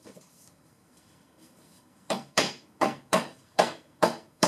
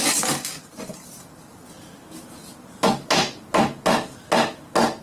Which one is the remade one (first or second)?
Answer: first